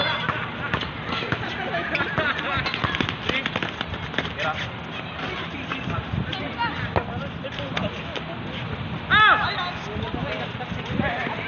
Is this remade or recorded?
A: recorded